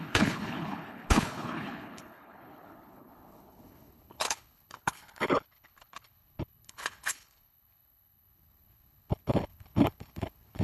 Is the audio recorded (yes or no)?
no